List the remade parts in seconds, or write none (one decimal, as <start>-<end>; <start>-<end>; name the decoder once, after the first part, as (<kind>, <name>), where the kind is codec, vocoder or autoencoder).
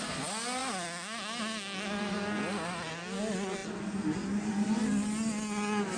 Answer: none